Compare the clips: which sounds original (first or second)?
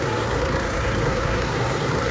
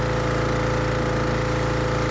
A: second